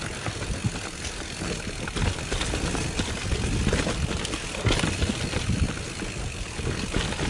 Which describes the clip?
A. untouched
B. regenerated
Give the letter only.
A